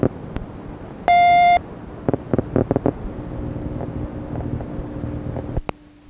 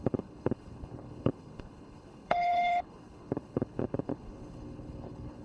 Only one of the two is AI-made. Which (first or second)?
second